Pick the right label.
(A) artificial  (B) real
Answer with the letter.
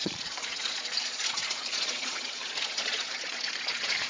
A